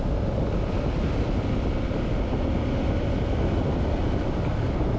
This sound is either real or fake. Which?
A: real